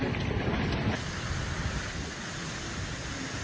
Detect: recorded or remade recorded